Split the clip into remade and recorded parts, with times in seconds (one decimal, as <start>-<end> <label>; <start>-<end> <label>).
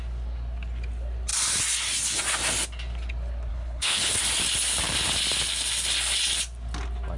0.0-3.5 recorded; 3.5-4.2 remade; 4.2-7.2 recorded